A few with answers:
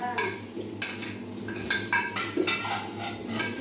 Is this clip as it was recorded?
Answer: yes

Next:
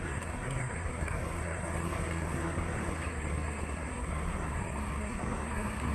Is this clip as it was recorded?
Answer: no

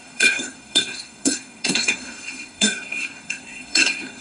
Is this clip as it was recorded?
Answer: no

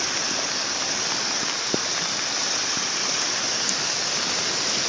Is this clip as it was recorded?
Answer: yes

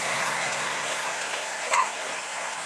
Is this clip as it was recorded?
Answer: no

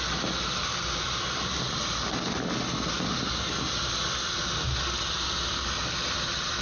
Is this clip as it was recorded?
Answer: yes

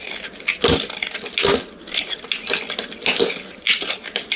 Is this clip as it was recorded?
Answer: yes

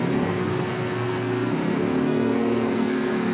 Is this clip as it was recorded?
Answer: no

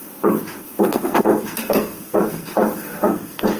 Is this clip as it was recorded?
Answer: no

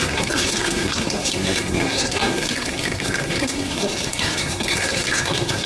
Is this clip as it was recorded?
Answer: no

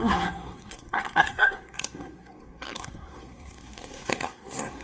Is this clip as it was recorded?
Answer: no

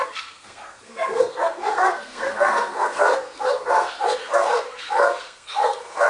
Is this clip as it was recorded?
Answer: no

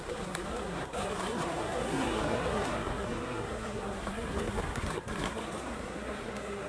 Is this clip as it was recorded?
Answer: no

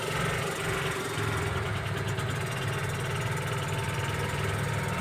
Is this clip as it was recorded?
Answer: yes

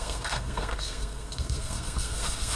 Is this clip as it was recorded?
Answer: no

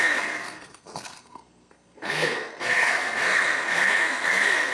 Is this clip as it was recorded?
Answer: no